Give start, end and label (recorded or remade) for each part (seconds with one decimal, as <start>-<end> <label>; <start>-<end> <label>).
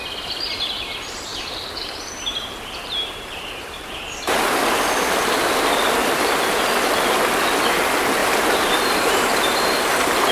0.0-1.3 recorded; 1.3-4.3 remade; 4.3-6.0 recorded; 6.0-6.6 remade; 6.6-8.2 recorded; 8.2-10.3 remade